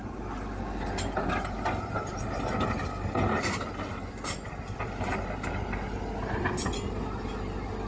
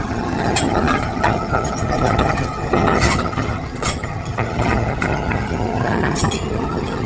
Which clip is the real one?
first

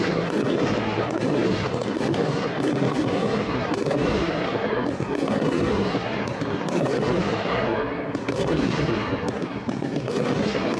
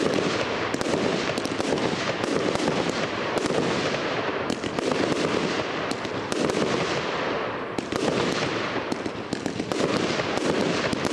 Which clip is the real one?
second